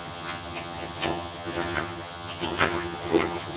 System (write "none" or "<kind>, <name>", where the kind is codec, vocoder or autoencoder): vocoder, HiFi-GAN